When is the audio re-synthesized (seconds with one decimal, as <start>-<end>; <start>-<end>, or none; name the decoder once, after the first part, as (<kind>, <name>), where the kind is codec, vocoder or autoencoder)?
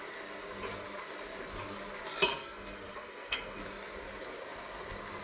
2.3-3.6 (codec, SNAC)